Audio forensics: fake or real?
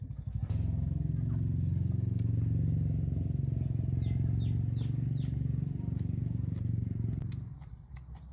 real